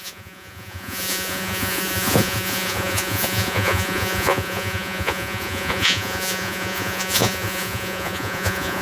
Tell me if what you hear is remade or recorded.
remade